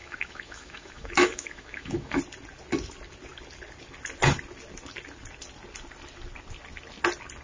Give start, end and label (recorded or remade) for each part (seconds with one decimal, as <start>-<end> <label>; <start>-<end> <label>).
0.0-2.2 remade; 2.2-7.4 recorded